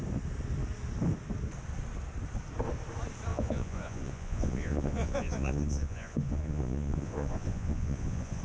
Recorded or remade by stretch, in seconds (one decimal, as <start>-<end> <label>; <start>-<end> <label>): 0.0-3.3 recorded; 3.3-8.4 remade